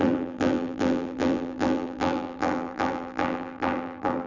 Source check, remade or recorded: remade